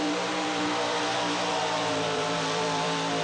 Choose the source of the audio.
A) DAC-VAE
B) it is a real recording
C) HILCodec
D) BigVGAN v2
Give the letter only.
D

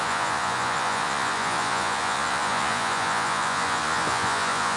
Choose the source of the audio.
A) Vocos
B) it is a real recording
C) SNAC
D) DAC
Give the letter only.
A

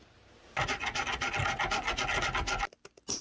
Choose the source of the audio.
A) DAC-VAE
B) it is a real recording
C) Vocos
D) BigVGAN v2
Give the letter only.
B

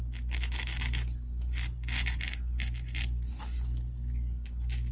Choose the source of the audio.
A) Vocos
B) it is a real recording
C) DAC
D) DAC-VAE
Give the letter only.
B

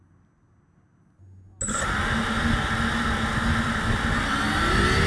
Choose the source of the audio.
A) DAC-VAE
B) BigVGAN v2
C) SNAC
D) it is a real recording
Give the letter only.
D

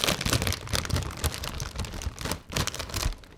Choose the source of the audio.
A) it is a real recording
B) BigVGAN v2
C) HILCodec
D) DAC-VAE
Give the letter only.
A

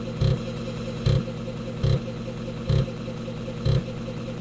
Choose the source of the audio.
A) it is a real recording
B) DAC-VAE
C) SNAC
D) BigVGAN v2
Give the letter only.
D